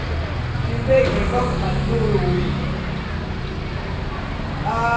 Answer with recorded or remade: recorded